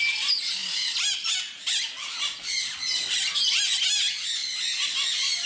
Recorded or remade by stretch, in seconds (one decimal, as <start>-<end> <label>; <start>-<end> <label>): 0.0-5.5 recorded